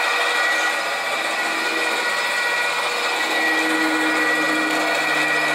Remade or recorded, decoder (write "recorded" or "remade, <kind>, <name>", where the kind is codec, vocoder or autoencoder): recorded